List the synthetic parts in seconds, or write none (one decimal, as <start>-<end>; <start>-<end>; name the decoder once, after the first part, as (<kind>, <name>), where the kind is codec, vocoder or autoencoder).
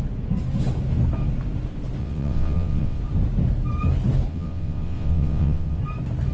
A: 2.0-3.0 (vocoder, WaveNeXt); 4.3-5.8